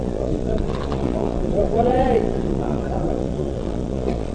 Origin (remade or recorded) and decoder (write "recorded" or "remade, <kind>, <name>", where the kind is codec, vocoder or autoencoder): remade, vocoder, Vocos